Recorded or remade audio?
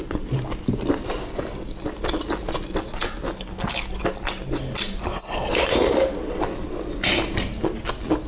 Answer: recorded